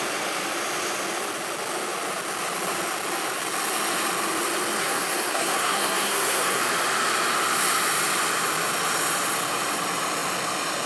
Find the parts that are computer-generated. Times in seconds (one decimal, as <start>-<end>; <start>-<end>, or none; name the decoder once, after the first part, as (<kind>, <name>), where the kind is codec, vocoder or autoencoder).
4.8-6.6 (codec, SNAC)